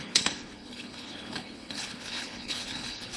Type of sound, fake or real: fake